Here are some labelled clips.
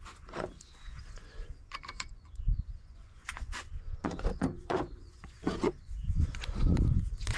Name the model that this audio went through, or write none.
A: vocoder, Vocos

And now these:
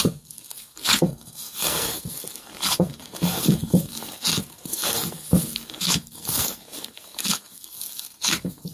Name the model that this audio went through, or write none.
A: codec, SNAC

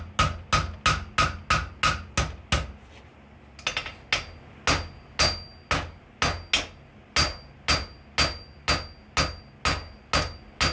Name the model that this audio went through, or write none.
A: none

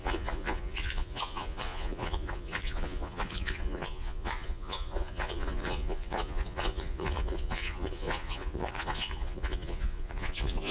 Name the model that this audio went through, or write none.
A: vocoder, Vocos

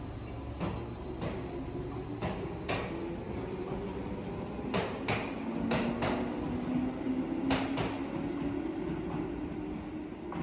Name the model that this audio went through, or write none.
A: none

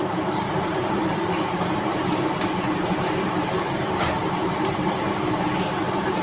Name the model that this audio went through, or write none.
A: vocoder, BigVGAN v2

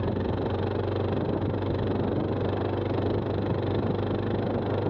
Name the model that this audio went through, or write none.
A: none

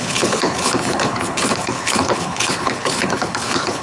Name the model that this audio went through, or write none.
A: codec, HILCodec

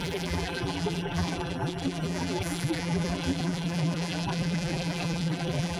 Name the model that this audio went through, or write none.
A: vocoder, BigVGAN v2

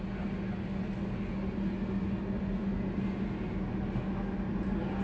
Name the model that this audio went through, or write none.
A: none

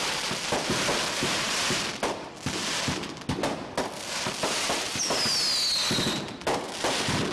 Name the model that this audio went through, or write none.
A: none